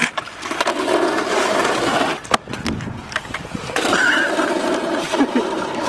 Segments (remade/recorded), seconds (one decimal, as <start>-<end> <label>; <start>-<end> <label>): 0.0-3.0 recorded; 3.0-5.9 remade